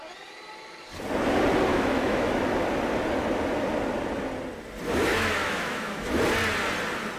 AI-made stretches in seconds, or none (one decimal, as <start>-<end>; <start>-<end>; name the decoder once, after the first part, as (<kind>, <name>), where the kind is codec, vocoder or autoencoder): 1.7-2.4 (autoencoder, DAC-VAE); 5.1-6.2